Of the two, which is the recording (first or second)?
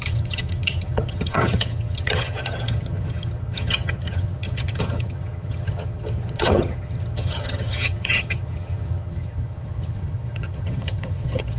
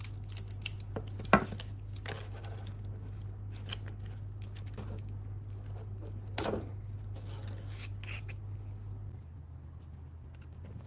second